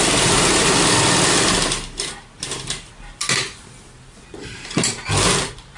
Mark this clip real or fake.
real